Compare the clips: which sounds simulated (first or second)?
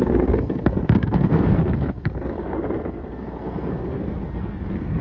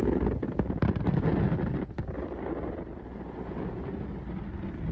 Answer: first